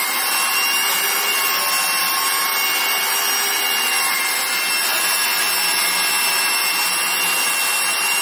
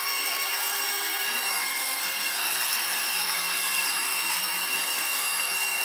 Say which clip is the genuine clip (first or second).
first